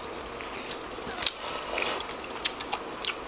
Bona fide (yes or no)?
yes